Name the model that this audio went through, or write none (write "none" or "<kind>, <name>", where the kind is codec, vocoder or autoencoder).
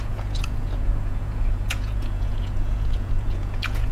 vocoder, Vocos